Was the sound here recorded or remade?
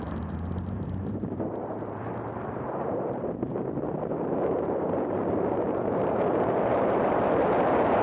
remade